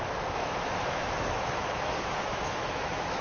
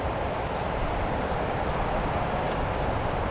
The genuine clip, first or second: second